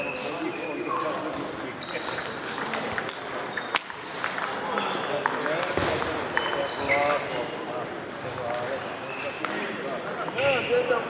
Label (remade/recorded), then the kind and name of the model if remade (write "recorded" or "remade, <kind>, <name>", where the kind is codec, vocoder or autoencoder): recorded